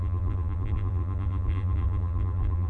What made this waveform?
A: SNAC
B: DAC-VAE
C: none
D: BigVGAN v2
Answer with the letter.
D